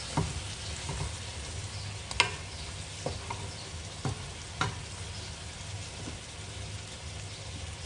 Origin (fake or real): real